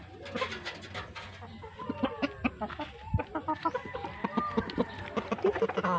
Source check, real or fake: real